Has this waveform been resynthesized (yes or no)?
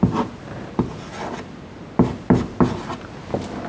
no